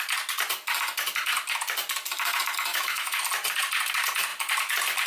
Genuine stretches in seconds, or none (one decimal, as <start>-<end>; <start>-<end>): 0.0-2.7; 3.2-5.1